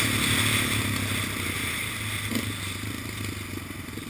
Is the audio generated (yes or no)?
no